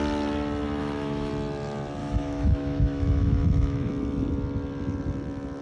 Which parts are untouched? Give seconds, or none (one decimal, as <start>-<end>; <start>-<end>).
0.0-0.8; 1.3-2.0; 3.9-5.6